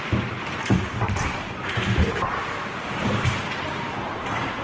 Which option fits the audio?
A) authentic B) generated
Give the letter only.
B